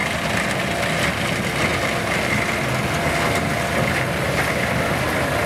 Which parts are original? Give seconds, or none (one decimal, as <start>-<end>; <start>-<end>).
0.0-5.5